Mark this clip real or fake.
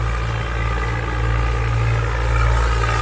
real